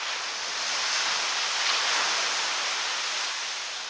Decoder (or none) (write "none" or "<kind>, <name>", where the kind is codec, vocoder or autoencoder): none